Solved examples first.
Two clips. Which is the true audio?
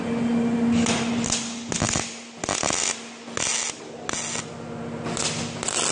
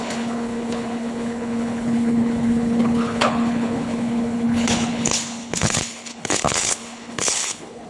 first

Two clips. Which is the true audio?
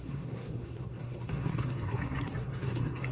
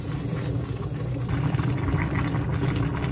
second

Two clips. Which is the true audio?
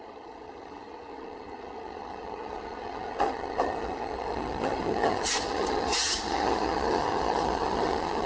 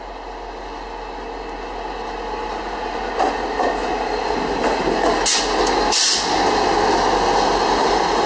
second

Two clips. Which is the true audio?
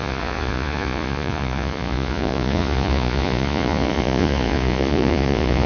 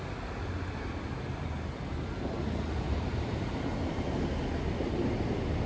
second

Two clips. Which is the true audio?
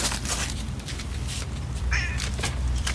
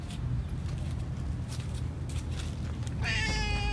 second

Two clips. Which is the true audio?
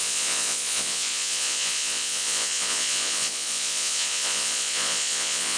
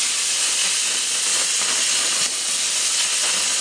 second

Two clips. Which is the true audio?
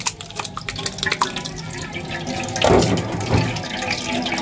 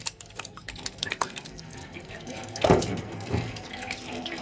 first